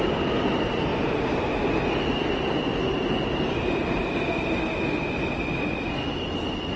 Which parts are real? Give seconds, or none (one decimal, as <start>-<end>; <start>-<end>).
0.0-6.8